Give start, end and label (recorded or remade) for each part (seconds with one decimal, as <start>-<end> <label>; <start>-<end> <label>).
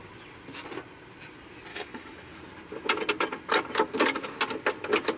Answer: 0.0-1.7 recorded; 1.7-2.3 remade; 2.3-5.2 recorded